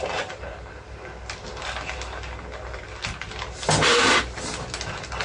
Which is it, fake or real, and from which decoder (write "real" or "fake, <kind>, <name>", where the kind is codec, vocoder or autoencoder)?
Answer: real